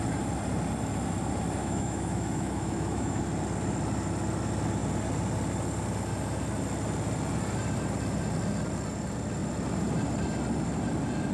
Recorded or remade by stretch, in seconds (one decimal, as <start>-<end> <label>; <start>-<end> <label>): 0.0-1.6 recorded; 1.6-3.2 remade; 3.2-11.3 recorded